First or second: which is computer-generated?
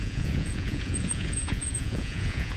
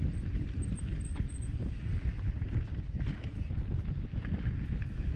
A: first